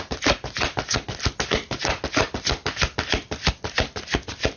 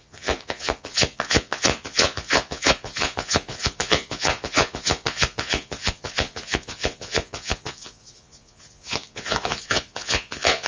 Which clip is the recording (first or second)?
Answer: first